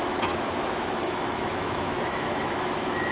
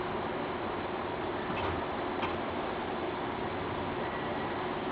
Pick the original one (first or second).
second